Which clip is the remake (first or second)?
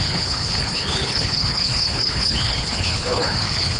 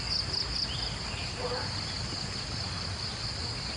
first